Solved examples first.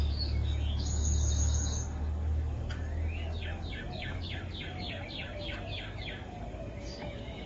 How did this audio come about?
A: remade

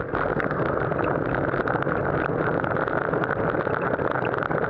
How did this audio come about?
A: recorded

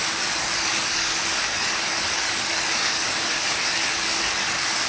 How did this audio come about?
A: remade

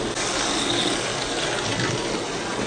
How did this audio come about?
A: recorded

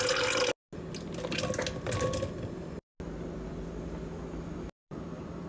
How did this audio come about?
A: recorded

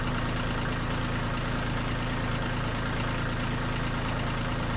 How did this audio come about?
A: recorded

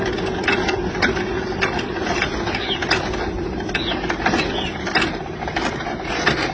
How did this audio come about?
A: recorded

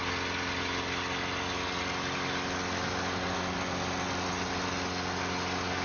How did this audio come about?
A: recorded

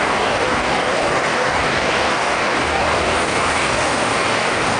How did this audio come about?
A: remade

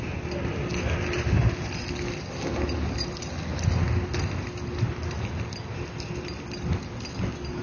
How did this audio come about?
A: recorded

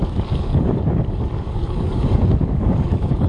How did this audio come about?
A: remade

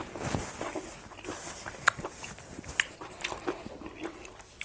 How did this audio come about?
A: recorded